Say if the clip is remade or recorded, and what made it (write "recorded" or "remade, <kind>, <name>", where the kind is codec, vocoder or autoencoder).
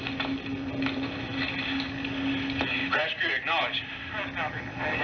recorded